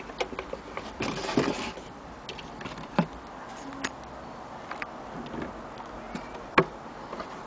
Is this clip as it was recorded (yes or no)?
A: yes